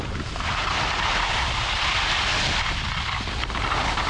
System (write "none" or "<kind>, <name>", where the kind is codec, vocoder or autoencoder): none